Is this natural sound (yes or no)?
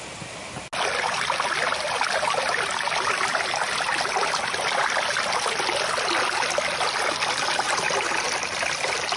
yes